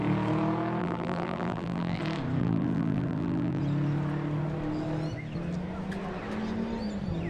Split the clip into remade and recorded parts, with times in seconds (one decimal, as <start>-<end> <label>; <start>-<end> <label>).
0.0-0.8 recorded; 0.8-2.0 remade; 2.0-2.4 recorded; 2.4-3.6 remade; 3.6-7.3 recorded